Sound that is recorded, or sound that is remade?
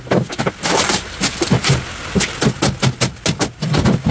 recorded